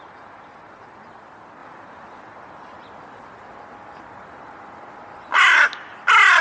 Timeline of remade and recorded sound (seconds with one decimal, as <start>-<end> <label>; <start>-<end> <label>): 0.0-6.4 recorded